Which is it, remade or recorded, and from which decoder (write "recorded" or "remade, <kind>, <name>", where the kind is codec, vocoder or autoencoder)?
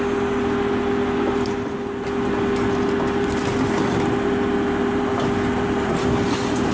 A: recorded